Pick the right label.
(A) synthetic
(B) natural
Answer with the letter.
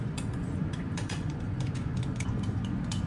A